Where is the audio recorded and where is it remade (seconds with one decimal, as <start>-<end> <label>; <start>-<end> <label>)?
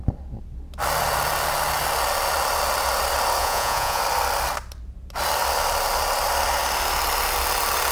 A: 0.0-3.4 recorded; 3.4-4.0 remade; 4.0-7.9 recorded